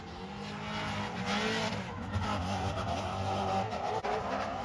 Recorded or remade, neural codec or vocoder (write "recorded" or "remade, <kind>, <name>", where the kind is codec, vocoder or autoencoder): recorded